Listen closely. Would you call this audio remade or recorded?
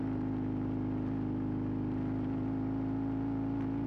recorded